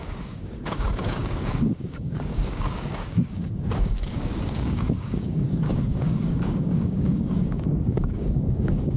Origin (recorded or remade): remade